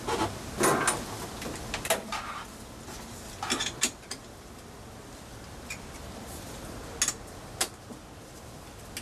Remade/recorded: recorded